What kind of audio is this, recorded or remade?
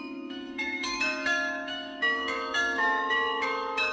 remade